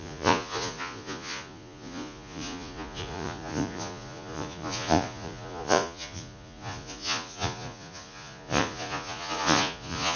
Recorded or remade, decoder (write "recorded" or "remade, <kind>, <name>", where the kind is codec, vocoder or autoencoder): remade, vocoder, Vocos